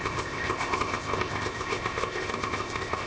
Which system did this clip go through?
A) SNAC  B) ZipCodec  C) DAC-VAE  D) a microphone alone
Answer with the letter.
B